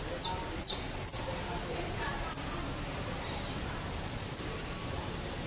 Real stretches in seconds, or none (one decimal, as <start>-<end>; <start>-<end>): 0.0-5.5